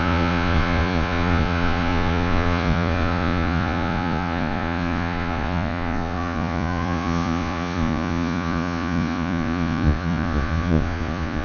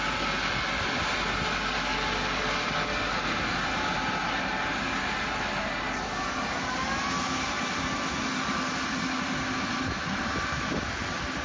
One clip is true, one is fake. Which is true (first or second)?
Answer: second